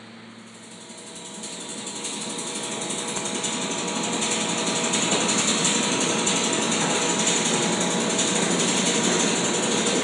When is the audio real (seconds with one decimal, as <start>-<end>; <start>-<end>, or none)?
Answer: 0.0-5.6; 6.2-10.0